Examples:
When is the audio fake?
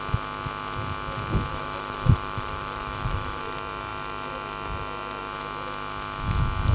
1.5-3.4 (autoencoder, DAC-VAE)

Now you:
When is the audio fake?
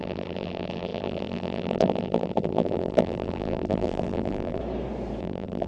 0.0-4.6 (vocoder, BigVGAN v2); 5.2-5.7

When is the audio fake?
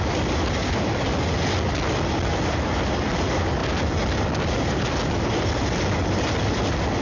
none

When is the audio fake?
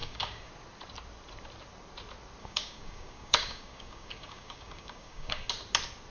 0.0-0.5 (codec, DAC); 2.4-5.5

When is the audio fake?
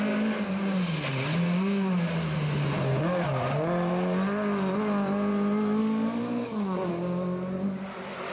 5.8-6.9 (codec, DAC)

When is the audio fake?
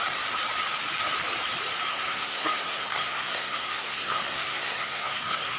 1.9-5.6 (codec, SNAC)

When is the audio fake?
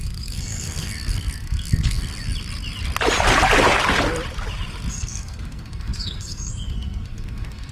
0.0-2.1 (codec, SNAC); 4.9-7.7